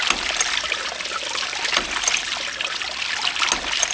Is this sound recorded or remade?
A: recorded